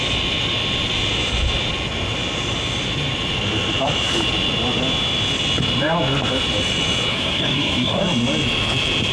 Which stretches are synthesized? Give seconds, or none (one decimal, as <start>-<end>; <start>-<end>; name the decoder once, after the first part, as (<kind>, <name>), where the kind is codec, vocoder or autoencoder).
7.1-8.0 (codec, SNAC)